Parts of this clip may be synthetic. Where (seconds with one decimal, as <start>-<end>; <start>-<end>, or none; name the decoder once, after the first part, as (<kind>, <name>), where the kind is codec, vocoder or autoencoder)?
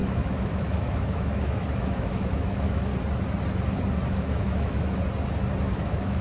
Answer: 0.0-2.9 (autoencoder, DAC-VAE); 4.1-5.0; 5.6-6.2